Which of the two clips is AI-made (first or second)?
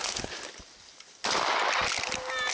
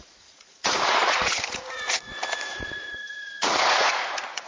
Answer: second